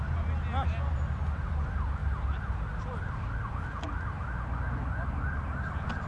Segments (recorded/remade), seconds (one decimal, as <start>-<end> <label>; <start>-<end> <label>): 0.0-6.1 recorded